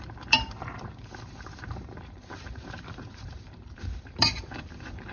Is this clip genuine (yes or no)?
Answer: no